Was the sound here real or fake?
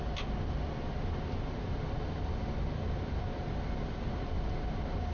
real